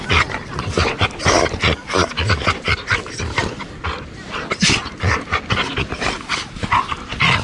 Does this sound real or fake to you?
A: real